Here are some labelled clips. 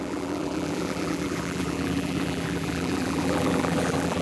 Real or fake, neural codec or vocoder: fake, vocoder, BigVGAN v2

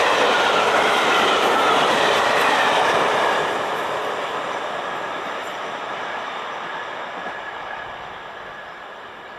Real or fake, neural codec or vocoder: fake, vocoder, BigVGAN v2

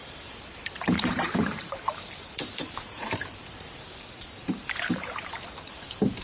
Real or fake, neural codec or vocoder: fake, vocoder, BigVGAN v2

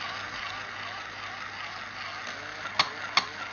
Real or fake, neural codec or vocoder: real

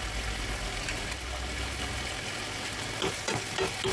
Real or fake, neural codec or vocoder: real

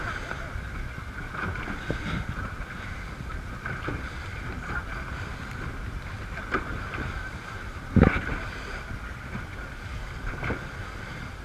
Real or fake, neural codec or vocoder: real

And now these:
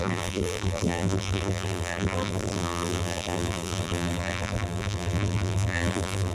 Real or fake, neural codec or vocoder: fake, vocoder, BigVGAN v2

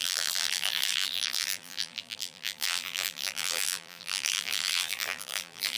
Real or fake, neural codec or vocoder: fake, vocoder, BigVGAN v2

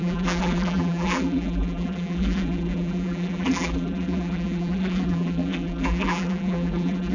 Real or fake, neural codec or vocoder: fake, vocoder, BigVGAN v2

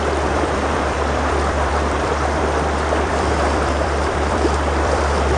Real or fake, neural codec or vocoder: fake, vocoder, BigVGAN v2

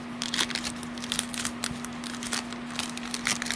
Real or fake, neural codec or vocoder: fake, vocoder, BigVGAN v2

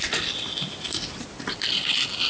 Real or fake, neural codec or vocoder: real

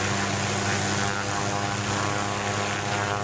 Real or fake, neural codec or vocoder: real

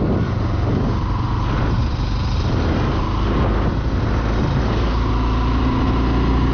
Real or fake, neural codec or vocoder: real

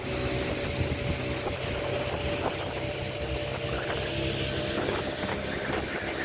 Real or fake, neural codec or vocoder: real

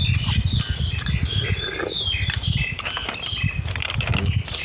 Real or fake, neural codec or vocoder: fake, vocoder, BigVGAN v2